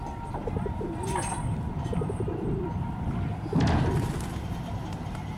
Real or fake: fake